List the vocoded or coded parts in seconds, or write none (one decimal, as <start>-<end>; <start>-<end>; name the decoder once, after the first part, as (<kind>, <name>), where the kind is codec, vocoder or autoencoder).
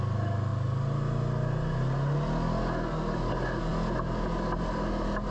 none